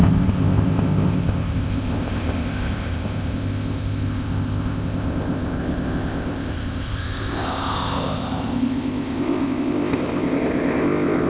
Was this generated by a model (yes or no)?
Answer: yes